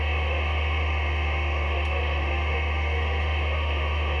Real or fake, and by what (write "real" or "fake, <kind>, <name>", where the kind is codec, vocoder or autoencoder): fake, autoencoder, DAC-VAE